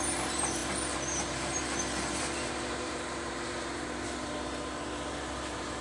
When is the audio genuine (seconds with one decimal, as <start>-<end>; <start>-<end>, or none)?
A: none